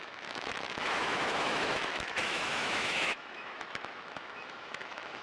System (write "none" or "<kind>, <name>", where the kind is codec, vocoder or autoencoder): autoencoder, DAC-VAE